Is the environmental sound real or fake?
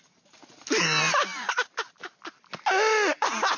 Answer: real